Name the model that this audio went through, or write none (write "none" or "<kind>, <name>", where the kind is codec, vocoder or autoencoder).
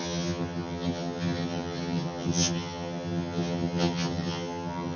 vocoder, HiFi-GAN